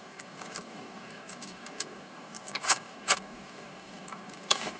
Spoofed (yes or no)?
yes